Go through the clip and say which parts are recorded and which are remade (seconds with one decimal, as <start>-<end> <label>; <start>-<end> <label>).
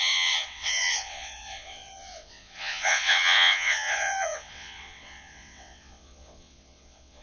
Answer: 0.0-7.2 remade